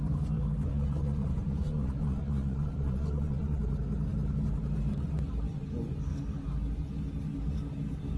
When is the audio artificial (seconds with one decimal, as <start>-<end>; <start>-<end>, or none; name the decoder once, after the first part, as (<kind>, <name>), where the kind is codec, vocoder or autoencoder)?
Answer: 0.7-3.6 (vocoder, Vocos)